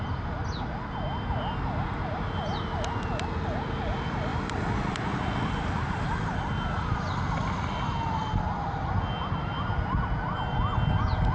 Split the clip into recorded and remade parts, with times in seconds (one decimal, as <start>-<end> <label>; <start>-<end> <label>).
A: 0.0-4.3 recorded; 4.3-6.4 remade; 6.4-11.3 recorded